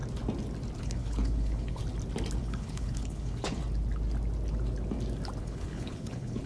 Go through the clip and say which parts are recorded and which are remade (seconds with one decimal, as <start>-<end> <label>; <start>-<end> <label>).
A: 0.0-0.8 recorded; 0.8-1.8 remade; 1.8-2.4 recorded; 2.4-3.6 remade; 3.6-5.4 recorded; 5.4-6.5 remade